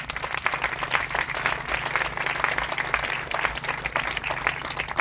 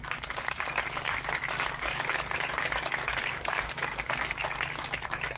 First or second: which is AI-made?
second